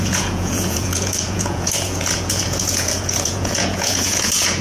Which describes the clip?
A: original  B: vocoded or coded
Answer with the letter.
B